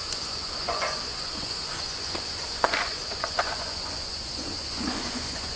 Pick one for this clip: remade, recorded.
remade